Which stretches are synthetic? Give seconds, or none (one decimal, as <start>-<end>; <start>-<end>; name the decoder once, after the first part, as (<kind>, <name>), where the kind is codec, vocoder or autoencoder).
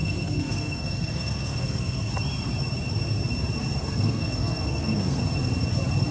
0.0-2.1 (codec, SNAC); 3.8-5.2